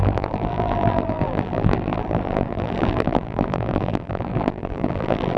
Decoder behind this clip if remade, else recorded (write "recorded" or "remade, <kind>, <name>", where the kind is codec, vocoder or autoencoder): remade, vocoder, BigVGAN v2